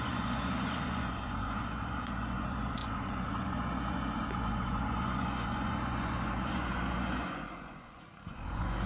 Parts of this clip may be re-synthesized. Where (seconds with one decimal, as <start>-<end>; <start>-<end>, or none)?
0.0-8.9